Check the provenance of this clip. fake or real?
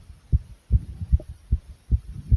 real